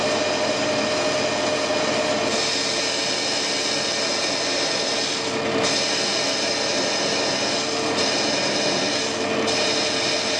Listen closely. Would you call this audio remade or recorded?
recorded